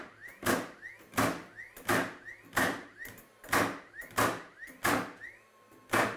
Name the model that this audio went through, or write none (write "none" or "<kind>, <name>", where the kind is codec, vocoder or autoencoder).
none